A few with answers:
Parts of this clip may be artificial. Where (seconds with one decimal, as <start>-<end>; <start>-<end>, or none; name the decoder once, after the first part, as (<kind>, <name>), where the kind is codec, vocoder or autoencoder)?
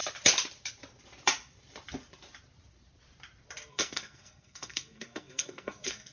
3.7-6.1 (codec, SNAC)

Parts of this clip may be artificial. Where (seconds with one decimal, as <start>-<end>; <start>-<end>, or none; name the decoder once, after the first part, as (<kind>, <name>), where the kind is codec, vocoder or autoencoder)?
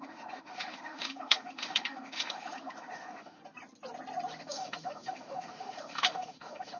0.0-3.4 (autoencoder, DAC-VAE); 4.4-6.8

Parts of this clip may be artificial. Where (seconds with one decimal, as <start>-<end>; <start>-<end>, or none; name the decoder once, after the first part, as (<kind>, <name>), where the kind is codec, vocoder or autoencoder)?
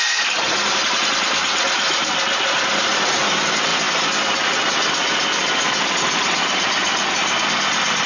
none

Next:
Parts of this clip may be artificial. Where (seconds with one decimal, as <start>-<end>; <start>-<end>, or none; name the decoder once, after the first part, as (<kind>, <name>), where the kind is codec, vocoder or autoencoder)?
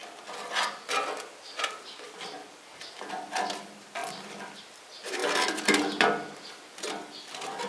2.5-5.2 (vocoder, BigVGAN v2); 6.5-7.7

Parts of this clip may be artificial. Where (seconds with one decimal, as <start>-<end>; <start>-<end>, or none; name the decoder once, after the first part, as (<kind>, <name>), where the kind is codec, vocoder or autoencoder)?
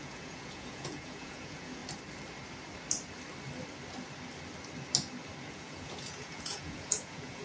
0.0-1.8 (vocoder, Vocos); 5.5-7.4